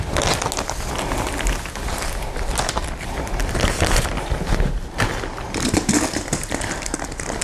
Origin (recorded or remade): recorded